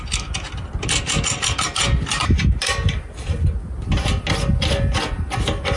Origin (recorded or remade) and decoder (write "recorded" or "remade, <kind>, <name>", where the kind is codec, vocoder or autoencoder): recorded